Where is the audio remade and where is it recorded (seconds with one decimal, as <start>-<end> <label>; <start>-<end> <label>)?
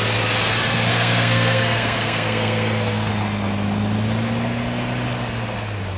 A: 0.0-0.9 recorded; 0.9-3.1 remade; 3.1-6.0 recorded